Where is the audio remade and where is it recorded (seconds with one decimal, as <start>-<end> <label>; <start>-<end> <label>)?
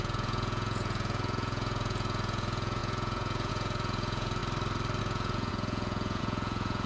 0.0-4.4 remade; 4.4-5.0 recorded; 5.0-6.9 remade